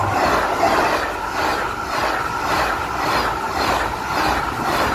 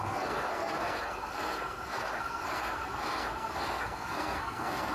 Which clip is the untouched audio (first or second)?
first